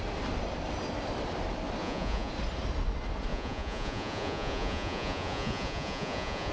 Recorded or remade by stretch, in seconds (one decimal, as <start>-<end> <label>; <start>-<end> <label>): 0.0-1.8 recorded; 1.8-2.3 remade; 2.3-3.3 recorded; 3.3-6.5 remade